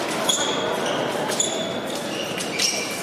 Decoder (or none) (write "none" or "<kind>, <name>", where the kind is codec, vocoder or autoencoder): none